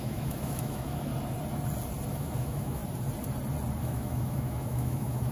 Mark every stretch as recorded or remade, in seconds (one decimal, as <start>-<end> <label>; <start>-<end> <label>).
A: 0.0-1.1 remade; 1.1-2.1 recorded; 2.1-2.8 remade; 2.8-3.8 recorded; 3.8-5.3 remade